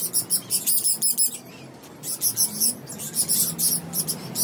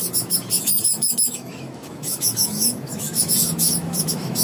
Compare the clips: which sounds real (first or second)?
first